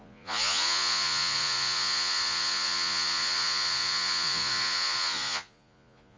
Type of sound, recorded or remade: remade